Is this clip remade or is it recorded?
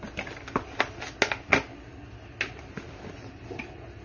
recorded